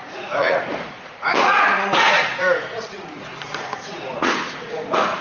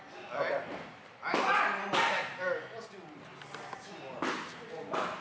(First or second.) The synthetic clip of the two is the first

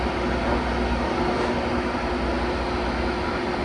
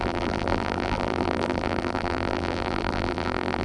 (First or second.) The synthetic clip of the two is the second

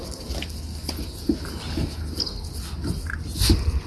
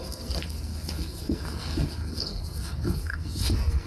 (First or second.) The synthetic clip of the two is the second